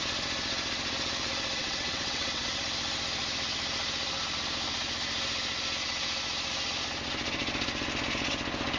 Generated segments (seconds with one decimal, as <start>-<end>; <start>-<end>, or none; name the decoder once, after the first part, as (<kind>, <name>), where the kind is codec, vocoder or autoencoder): 1.6-2.6 (vocoder, WaveNeXt)